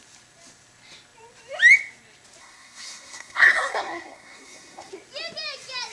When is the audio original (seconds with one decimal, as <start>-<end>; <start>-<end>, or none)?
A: 0.0-2.4; 4.9-5.9